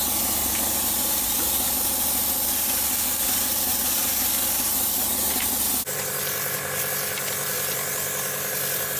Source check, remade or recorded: recorded